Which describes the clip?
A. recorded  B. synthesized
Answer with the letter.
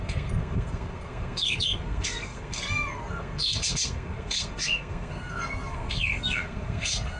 B